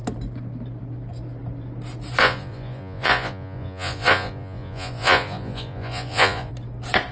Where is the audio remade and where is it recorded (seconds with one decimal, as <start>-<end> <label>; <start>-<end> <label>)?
0.0-2.2 recorded; 2.2-6.5 remade; 6.5-7.1 recorded